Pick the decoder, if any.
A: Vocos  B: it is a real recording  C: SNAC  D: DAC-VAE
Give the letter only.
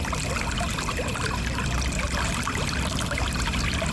B